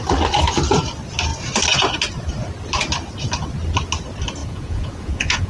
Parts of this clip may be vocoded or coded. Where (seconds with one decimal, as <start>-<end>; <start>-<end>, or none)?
4.4-5.5